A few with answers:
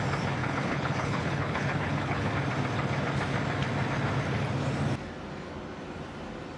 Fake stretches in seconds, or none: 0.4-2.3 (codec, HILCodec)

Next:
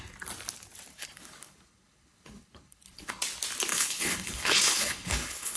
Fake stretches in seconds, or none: 0.9-3.1 (codec, HILCodec); 3.7-5.6

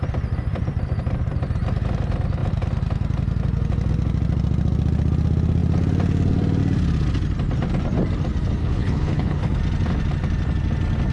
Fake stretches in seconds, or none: 8.6-9.6 (codec, HILCodec)

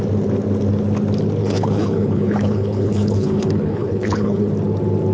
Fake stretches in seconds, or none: 1.4-4.5 (codec, HILCodec)

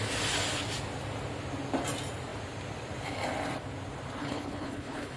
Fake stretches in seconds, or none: 4.2-5.2 (codec, HILCodec)